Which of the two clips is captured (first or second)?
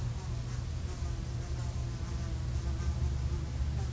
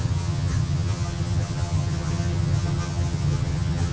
first